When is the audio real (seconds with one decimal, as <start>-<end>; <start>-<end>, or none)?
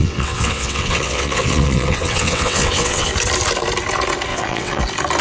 3.1-4.3; 4.8-5.2